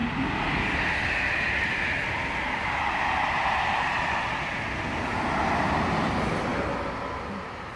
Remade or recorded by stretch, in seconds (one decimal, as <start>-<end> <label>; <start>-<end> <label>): 0.0-7.8 recorded